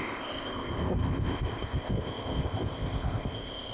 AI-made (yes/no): yes